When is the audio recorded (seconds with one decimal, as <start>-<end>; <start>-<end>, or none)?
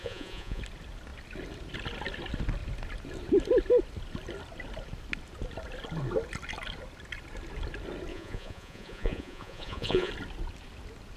0.6-8.1; 10.1-11.2